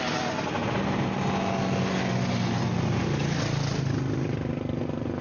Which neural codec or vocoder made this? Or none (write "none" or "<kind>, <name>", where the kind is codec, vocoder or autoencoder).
none